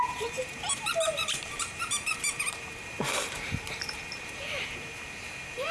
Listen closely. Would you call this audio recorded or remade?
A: remade